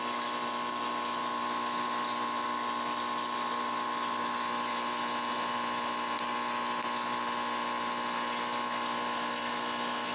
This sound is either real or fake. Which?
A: real